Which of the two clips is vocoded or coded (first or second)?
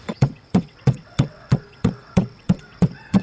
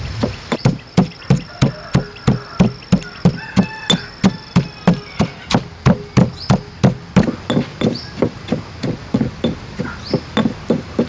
first